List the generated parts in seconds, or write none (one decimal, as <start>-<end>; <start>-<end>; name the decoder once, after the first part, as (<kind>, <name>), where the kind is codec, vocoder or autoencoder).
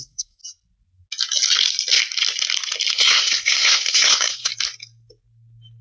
0.0-0.4 (codec, SNAC); 2.9-4.5